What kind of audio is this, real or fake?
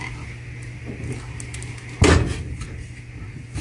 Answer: real